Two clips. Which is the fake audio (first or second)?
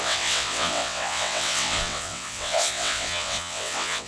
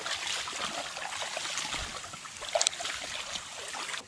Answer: first